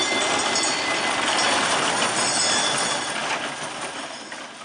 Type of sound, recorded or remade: recorded